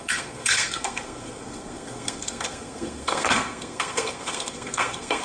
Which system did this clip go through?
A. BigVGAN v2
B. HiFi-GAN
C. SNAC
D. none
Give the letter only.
C